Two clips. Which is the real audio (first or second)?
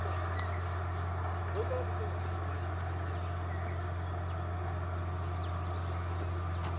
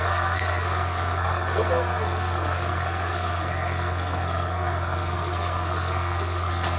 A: first